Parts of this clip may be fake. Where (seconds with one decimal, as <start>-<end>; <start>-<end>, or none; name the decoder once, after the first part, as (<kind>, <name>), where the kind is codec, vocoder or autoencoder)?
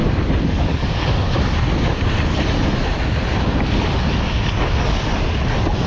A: 0.5-1.0 (codec, DAC); 4.5-5.1